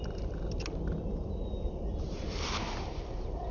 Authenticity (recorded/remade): recorded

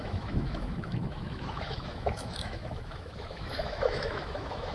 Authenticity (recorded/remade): remade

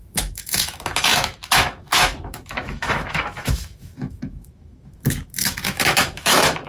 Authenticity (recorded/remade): remade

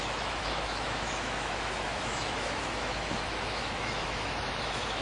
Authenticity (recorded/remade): remade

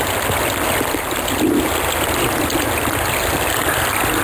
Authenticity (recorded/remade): recorded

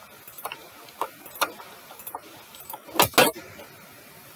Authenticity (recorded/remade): recorded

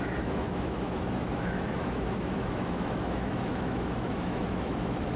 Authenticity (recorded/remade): remade